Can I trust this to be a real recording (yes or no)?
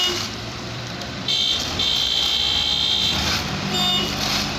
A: no